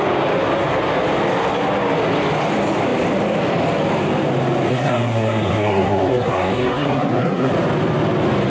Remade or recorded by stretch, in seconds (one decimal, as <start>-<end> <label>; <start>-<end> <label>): 0.0-4.7 recorded; 4.7-7.5 remade; 7.5-8.5 recorded